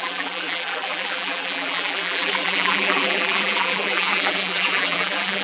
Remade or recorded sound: remade